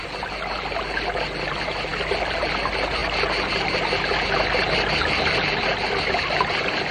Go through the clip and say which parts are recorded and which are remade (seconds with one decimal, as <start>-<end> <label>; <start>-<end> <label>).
0.0-6.9 recorded